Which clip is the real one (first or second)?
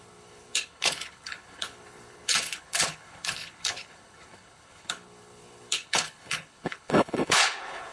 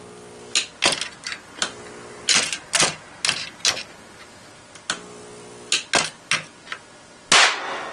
second